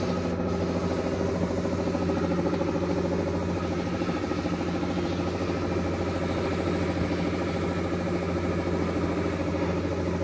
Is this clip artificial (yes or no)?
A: no